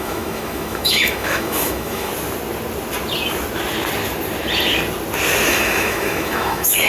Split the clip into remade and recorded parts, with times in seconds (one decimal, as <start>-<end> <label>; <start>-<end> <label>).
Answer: 0.0-2.1 remade; 2.1-5.5 recorded; 5.5-6.9 remade